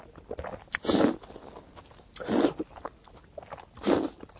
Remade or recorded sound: recorded